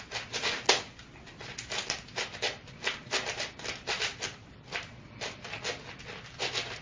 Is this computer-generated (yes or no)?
no